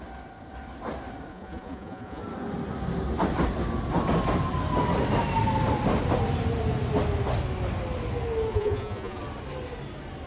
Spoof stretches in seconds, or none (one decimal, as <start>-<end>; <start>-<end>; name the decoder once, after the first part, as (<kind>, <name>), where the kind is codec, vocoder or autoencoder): 1.3-2.2 (vocoder, Vocos); 8.5-9.2